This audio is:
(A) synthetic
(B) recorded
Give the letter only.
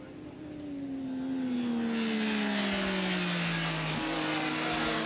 B